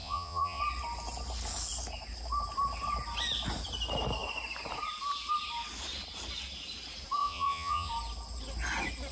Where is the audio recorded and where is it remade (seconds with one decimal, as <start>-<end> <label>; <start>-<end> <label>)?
0.0-0.6 remade; 0.6-7.2 recorded; 7.2-7.9 remade; 7.9-9.1 recorded